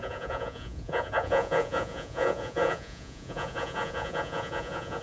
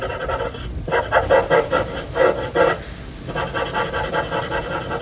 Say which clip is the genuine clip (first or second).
second